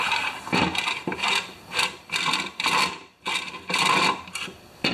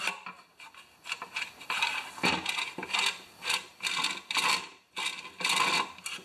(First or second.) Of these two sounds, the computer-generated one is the first